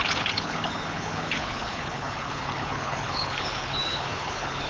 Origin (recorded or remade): remade